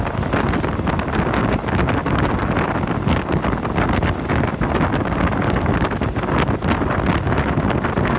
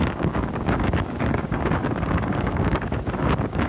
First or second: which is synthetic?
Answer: second